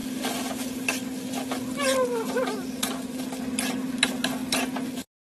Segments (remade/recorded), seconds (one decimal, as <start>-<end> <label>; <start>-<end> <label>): 0.0-5.3 recorded